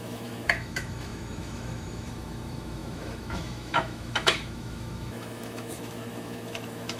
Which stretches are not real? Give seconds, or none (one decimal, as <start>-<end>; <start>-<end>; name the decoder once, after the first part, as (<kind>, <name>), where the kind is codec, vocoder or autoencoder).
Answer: 0.0-7.0 (autoencoder, DAC-VAE)